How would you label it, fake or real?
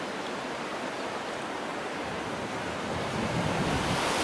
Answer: real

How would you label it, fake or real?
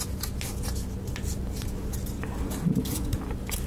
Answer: real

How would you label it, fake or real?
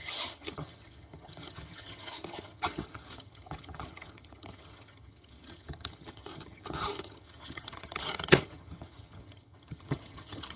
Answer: fake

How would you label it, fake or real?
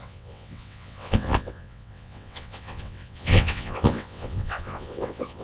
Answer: fake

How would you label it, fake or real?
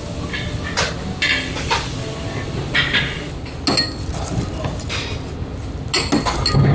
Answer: real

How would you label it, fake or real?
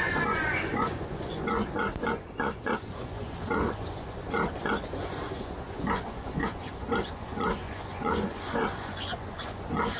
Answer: fake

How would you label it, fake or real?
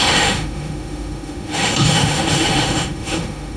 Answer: fake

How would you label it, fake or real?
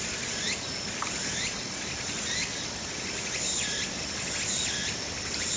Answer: real